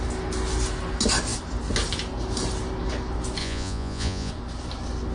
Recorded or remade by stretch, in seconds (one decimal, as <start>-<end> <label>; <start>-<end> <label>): 0.0-3.4 recorded; 3.4-4.3 remade; 4.3-5.1 recorded